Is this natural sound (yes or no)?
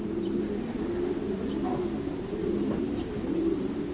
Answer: yes